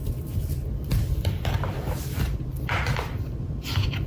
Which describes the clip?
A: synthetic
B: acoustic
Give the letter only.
A